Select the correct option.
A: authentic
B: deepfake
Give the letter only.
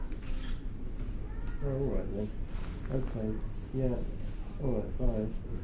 A